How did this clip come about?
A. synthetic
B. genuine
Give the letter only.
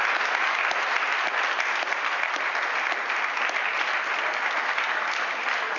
B